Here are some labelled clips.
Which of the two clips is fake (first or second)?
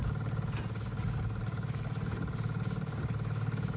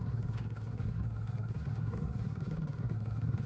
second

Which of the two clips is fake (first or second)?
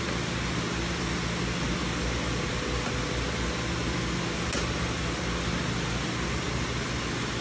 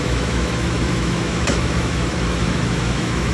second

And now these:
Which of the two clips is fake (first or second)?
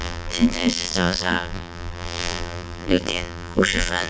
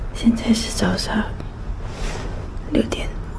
first